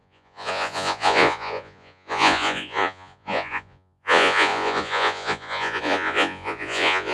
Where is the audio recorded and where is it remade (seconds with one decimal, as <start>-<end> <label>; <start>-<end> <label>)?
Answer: 0.0-7.1 remade